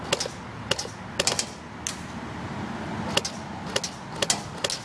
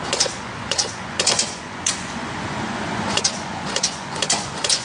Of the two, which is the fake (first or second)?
second